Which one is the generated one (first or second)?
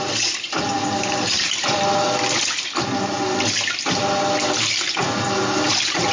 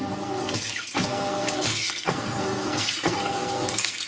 second